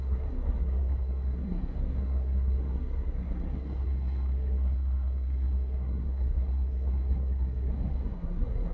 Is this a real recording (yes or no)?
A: no